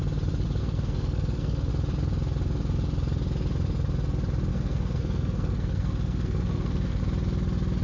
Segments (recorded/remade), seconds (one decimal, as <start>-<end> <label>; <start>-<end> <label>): 0.0-0.6 recorded; 0.6-1.7 remade; 1.7-4.5 recorded; 4.5-7.0 remade; 7.0-7.8 recorded